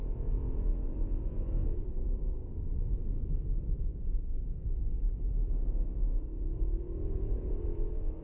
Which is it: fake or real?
fake